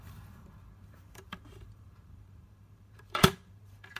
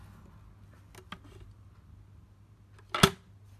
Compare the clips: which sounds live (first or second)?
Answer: second